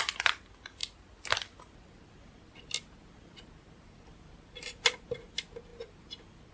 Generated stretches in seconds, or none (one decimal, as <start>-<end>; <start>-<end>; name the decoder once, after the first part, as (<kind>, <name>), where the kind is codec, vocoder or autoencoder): none